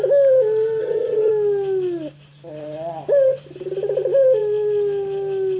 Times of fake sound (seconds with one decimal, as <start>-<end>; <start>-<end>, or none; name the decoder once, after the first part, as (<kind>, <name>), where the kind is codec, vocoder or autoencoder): 0.8-1.3 (vocoder, HiFi-GAN)